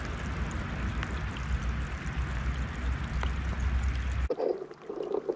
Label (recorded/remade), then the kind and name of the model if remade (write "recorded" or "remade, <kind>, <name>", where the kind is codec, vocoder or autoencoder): recorded